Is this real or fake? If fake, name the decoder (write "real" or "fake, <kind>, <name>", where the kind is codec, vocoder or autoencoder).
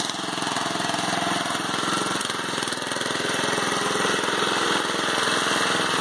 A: real